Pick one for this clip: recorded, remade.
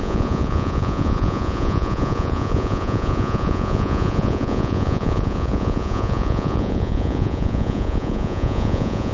remade